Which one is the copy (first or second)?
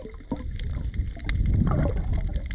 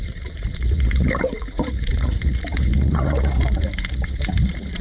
second